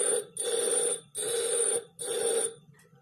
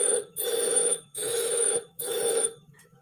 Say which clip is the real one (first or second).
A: first